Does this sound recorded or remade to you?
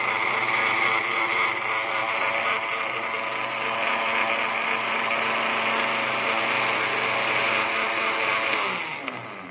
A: recorded